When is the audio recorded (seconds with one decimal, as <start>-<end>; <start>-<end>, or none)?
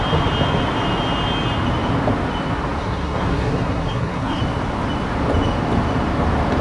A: 0.0-2.8; 4.4-6.6